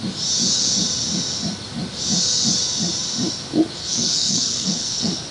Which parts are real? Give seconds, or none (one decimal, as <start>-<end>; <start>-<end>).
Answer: 0.0-3.8